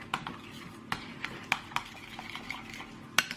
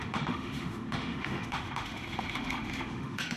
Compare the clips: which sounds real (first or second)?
first